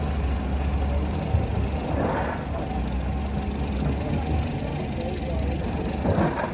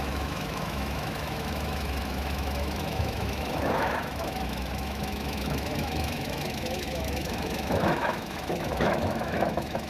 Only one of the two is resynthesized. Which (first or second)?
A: second